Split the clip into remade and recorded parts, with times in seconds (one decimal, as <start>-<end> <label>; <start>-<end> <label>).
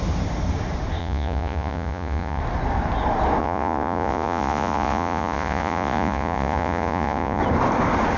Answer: 0.0-1.0 recorded; 1.0-2.4 remade; 2.4-3.4 recorded; 3.4-7.4 remade; 7.4-8.2 recorded